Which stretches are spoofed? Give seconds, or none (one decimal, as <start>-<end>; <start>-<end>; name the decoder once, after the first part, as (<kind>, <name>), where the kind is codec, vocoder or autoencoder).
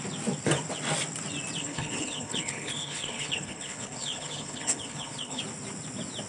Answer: 1.6-5.4 (codec, HILCodec)